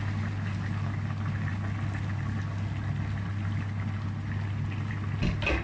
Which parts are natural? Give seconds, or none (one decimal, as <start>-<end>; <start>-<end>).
0.0-5.6